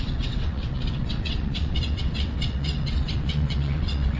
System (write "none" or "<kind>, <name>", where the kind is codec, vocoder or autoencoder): vocoder, WaveNeXt